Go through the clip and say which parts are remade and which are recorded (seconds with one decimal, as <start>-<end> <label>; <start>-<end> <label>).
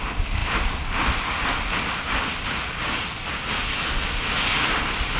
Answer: 0.0-0.4 recorded; 0.4-1.5 remade; 1.5-5.2 recorded